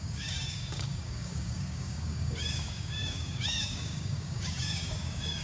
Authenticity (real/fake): fake